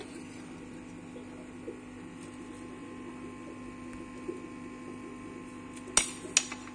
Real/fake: real